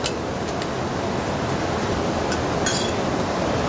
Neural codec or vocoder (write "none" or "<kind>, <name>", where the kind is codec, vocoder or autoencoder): none